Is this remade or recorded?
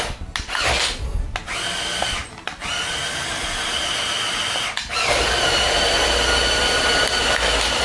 recorded